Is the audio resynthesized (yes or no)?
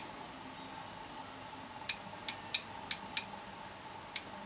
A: no